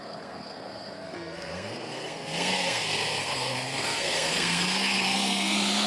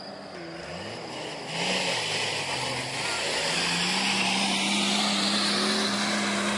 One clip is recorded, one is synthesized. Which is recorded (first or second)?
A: second